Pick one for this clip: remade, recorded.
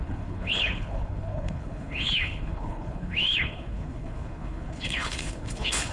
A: remade